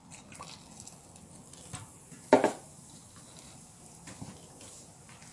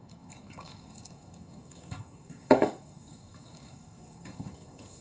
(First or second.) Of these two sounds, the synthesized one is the second